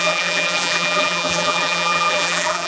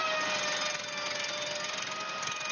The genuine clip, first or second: second